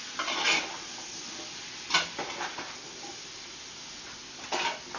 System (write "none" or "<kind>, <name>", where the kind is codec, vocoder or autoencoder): none